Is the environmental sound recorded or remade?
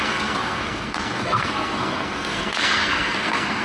remade